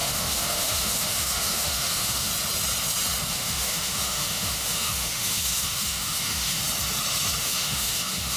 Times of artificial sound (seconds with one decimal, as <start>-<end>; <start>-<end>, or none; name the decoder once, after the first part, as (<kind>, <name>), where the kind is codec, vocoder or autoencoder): 0.0-2.3 (autoencoder, DAC-VAE); 3.3-6.6; 7.4-8.4